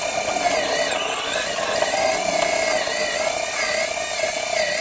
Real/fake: real